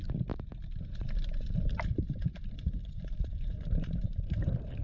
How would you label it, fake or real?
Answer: fake